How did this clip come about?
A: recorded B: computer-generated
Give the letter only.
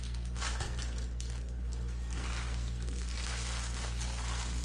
B